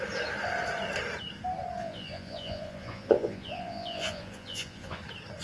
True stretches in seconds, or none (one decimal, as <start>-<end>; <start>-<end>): 0.0-1.8; 5.0-5.4